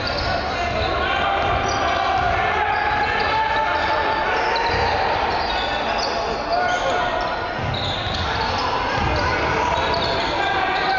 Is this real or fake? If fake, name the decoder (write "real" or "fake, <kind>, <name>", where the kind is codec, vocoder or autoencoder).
real